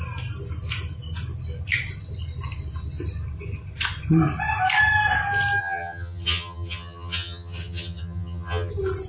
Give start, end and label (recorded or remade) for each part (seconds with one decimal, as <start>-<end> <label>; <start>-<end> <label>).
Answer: 0.0-5.6 recorded; 5.6-8.7 remade; 8.7-9.1 recorded